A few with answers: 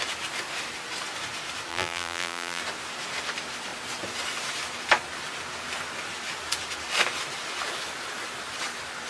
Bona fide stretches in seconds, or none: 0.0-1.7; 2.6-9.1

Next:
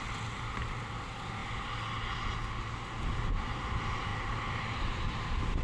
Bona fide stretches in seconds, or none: 1.4-3.4